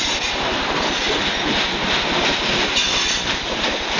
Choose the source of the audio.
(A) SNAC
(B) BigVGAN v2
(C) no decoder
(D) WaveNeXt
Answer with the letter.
C